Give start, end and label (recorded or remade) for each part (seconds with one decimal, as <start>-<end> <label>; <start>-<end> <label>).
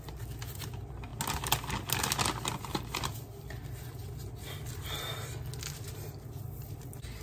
0.0-7.2 recorded